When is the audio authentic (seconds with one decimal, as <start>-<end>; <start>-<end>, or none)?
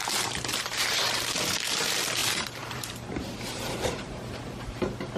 none